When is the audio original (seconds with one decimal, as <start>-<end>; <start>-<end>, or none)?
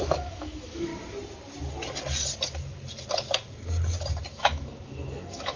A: 0.9-4.3